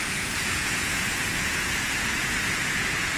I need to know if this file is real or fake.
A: fake